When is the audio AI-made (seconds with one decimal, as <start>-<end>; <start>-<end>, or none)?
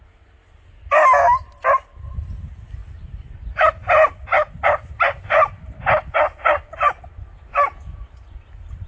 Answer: none